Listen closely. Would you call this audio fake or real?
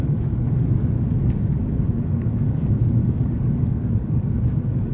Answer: fake